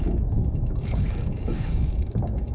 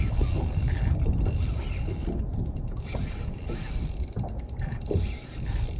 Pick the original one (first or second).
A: second